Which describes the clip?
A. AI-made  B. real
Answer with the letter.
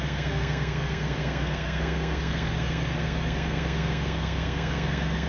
A